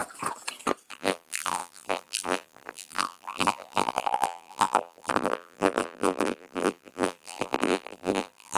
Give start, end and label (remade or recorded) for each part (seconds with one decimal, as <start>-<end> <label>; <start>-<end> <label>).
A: 0.0-0.9 recorded; 0.9-8.6 remade